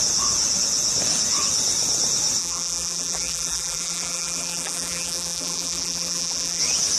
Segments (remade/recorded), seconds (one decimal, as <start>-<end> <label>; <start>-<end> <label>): 0.0-2.4 recorded; 2.4-6.6 remade; 6.6-7.0 recorded